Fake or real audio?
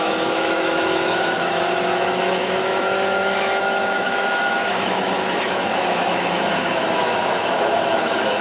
fake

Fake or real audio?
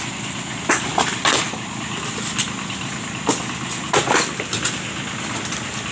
real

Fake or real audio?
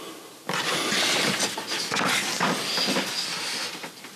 real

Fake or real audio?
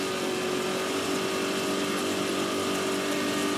real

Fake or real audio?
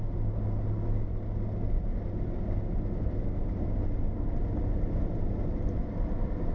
real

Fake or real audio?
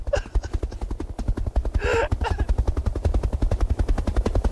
real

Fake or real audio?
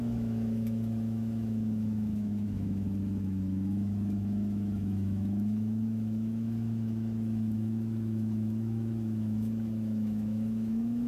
fake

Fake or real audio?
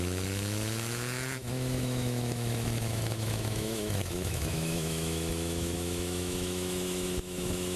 fake